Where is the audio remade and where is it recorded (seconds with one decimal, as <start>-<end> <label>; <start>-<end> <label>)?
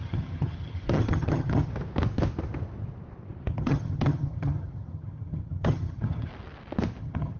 0.0-1.7 remade; 1.7-3.5 recorded; 3.5-6.3 remade; 6.3-7.0 recorded; 7.0-7.4 remade